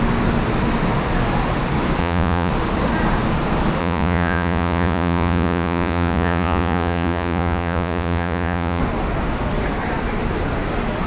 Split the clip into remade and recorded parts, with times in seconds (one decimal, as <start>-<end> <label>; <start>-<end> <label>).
0.0-2.0 recorded; 2.0-2.5 remade; 2.5-3.8 recorded; 3.8-8.8 remade; 8.8-11.1 recorded